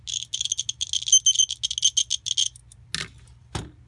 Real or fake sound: real